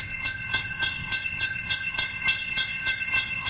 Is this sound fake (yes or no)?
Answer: yes